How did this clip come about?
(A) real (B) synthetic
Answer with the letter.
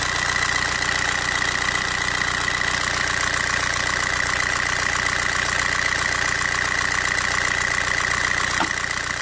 A